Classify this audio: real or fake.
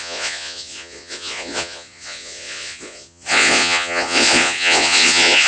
fake